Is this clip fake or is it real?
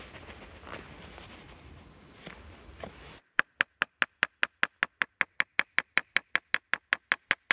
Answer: real